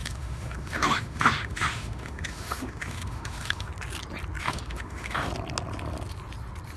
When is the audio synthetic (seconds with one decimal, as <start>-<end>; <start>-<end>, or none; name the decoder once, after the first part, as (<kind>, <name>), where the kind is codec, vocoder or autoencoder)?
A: 0.0-3.7 (autoencoder, DAC-VAE); 4.4-5.3